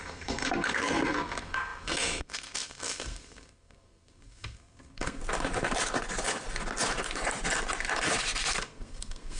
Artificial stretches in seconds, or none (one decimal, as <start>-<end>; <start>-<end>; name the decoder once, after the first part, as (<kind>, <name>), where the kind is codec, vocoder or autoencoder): 0.0-5.2 (codec, SNAC); 8.6-9.4